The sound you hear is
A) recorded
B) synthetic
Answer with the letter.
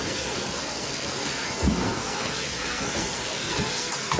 B